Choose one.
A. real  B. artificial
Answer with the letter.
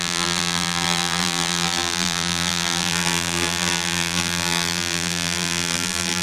B